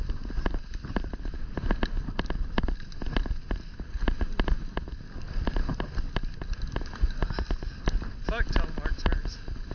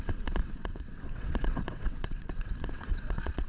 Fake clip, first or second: second